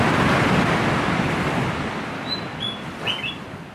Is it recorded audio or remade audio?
recorded